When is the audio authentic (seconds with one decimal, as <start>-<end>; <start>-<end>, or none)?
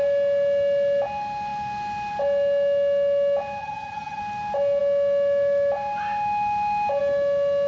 0.0-3.6; 4.2-7.7